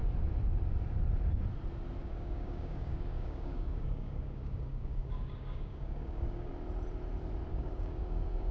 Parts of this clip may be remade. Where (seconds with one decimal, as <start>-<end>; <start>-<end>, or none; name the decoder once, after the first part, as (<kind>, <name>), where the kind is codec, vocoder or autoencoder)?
2.0-6.5 (codec, DAC); 7.5-8.5